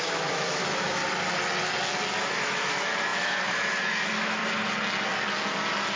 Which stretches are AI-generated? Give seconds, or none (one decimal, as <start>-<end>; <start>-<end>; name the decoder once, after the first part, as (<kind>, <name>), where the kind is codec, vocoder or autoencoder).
0.0-1.0 (autoencoder, DAC-VAE); 2.3-4.4